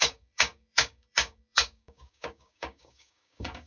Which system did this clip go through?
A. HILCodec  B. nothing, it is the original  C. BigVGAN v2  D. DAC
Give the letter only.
D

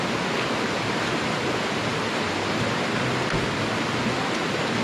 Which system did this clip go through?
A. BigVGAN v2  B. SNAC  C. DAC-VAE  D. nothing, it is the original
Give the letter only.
D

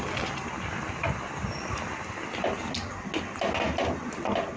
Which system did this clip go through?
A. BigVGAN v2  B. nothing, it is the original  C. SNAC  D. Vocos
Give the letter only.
B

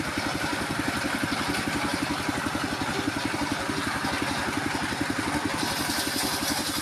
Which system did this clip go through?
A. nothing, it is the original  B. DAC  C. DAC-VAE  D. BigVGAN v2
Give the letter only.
D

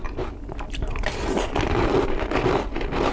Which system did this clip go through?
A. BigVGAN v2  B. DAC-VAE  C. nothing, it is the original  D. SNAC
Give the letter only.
C